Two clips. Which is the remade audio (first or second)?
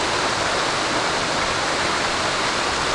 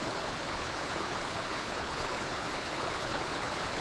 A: second